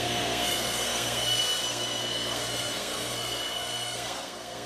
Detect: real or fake fake